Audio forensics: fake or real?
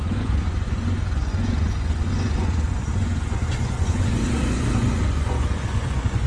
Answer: fake